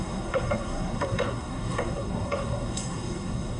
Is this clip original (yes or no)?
no